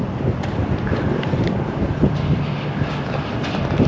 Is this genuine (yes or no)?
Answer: yes